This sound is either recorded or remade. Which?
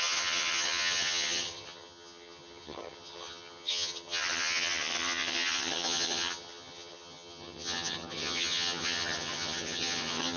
remade